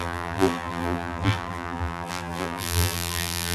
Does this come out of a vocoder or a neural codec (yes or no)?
yes